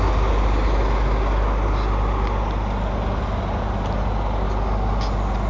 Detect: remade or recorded recorded